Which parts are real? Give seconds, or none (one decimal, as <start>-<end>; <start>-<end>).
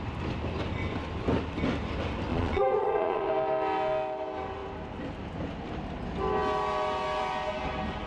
0.0-2.3; 3.3-8.1